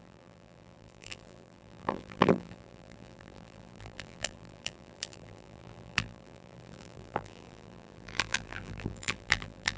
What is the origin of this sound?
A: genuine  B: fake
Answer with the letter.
B